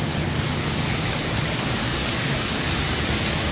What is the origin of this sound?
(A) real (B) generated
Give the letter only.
B